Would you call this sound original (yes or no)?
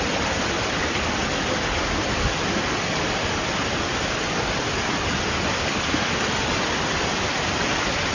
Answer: yes